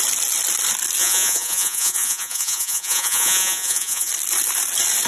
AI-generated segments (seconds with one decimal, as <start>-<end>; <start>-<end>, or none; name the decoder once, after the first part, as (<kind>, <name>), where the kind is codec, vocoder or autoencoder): 1.0-4.1 (vocoder, Vocos)